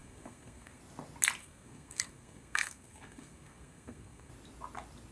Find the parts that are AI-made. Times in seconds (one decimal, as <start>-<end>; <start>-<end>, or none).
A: 0.0-0.8; 1.4-4.3